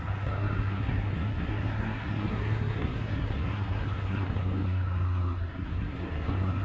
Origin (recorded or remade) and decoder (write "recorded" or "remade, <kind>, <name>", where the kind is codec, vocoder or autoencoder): remade, codec, SNAC